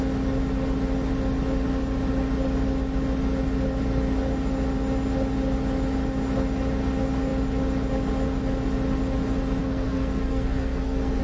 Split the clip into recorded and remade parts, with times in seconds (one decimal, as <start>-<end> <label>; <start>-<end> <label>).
0.0-9.6 recorded; 9.6-11.2 remade